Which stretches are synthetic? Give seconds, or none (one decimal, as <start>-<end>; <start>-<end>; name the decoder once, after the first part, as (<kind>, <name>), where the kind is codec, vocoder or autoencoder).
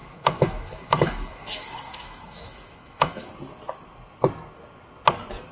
0.0-3.3 (autoencoder, DAC-VAE)